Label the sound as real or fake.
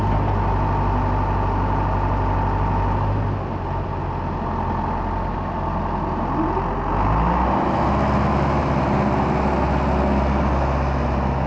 real